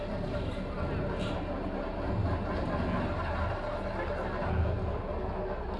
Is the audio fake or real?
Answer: real